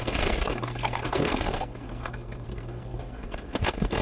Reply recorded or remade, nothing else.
remade